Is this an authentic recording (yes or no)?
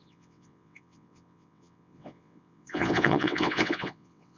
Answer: no